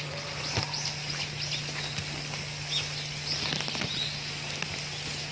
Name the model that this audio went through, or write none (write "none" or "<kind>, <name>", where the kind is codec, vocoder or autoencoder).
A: none